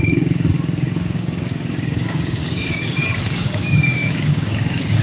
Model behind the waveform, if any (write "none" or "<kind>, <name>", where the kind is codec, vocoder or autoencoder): codec, DAC